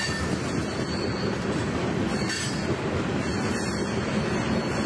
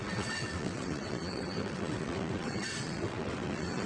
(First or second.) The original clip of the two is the first